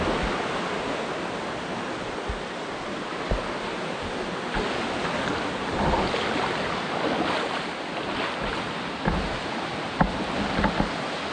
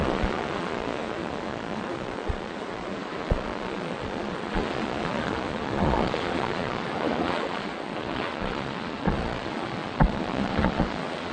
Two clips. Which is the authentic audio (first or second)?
first